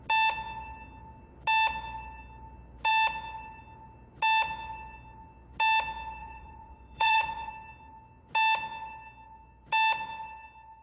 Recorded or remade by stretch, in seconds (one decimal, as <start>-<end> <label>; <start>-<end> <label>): 0.0-6.2 recorded; 6.2-7.5 remade; 7.5-10.8 recorded